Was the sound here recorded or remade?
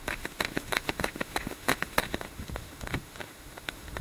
remade